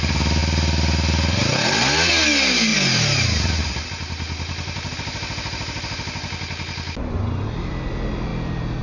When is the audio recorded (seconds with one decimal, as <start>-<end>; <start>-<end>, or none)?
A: 0.0-8.8